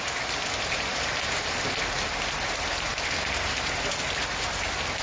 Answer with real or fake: real